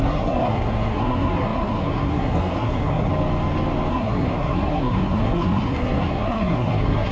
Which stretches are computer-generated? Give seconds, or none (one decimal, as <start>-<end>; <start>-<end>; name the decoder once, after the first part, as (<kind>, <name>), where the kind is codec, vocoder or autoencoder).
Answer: 0.0-3.1 (codec, SNAC); 3.9-7.1